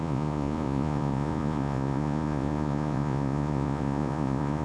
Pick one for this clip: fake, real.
fake